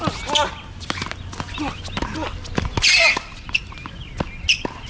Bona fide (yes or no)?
yes